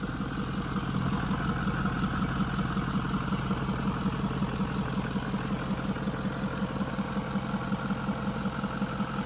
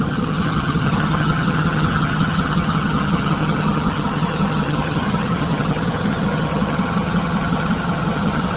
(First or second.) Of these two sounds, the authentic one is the first